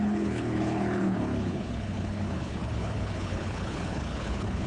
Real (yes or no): no